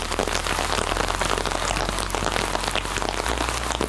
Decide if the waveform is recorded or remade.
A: recorded